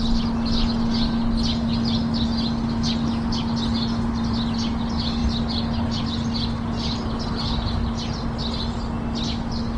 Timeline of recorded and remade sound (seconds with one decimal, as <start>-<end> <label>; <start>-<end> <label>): 0.0-9.8 recorded